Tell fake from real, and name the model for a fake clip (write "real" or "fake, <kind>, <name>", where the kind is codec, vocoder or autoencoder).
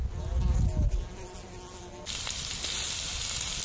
real